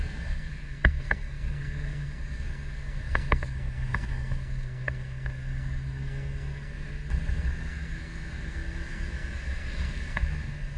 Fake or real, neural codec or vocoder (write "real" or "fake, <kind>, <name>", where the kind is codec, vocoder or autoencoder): fake, codec, SNAC